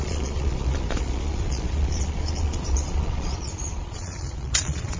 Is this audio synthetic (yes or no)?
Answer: yes